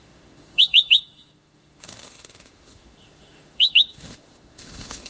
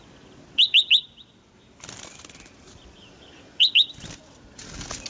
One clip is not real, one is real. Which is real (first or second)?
second